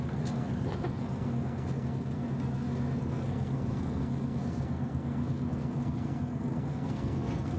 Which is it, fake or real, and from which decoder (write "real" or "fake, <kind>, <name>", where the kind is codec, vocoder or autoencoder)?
fake, codec, SNAC